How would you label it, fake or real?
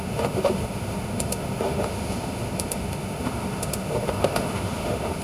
fake